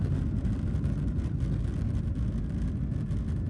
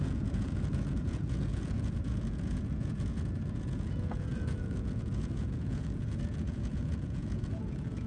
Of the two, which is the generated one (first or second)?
second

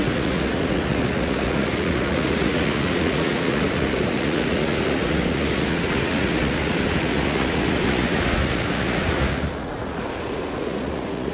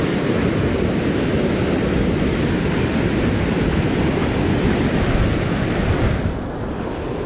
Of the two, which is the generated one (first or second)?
first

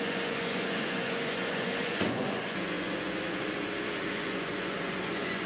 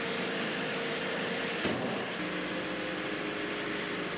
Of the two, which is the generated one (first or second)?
first